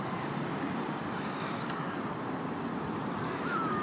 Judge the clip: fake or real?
real